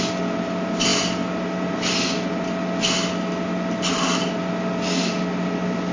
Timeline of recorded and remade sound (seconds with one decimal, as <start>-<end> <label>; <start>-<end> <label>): 0.0-5.9 recorded